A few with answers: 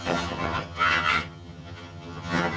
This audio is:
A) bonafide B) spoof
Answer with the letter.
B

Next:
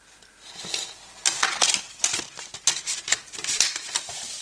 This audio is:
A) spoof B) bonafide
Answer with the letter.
B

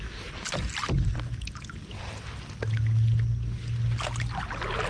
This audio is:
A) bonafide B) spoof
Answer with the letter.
A